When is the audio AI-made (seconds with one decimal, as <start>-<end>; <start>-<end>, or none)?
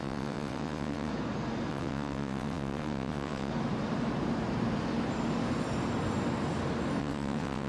0.0-1.1; 1.7-3.5; 7.0-7.7